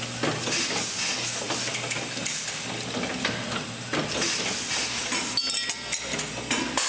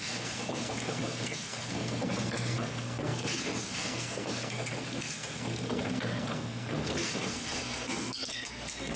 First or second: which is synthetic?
second